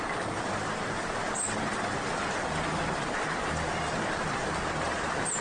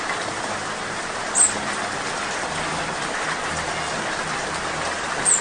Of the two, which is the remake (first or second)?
first